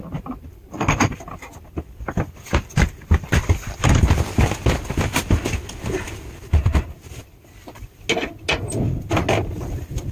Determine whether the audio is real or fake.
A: real